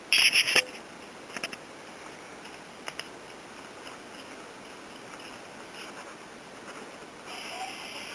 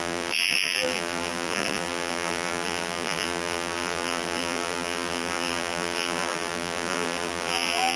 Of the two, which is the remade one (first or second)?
second